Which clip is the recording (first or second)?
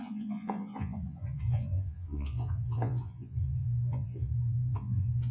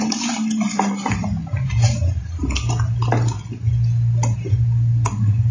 second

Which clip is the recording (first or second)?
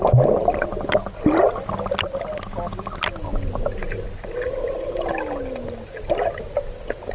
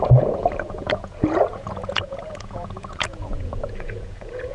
first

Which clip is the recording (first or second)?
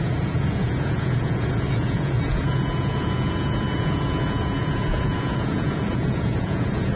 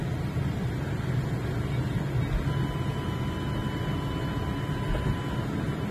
second